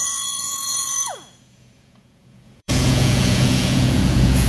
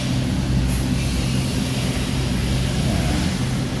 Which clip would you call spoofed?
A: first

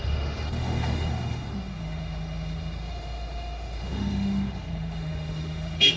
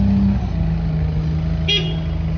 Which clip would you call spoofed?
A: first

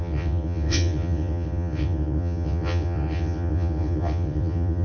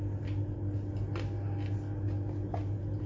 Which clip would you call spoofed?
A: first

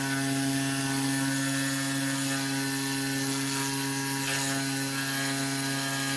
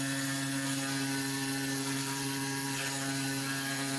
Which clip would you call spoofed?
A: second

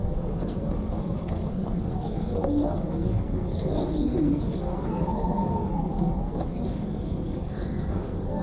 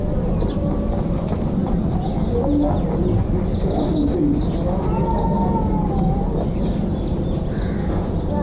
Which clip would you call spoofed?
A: first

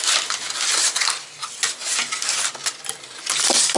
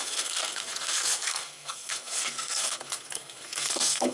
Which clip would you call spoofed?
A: second